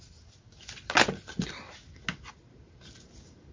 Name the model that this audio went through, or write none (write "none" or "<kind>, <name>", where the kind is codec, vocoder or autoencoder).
none